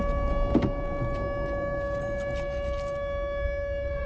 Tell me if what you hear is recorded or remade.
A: recorded